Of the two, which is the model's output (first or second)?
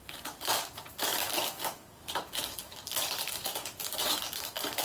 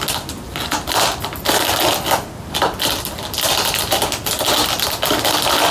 first